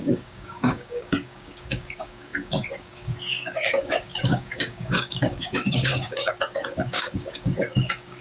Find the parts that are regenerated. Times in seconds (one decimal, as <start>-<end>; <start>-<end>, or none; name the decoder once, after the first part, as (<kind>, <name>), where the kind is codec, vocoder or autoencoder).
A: 0.0-8.2 (codec, DAC)